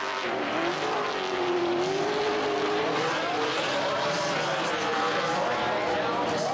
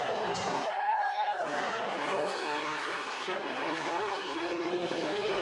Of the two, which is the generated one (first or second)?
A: second